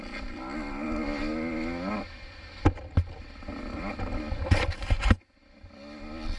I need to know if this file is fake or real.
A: real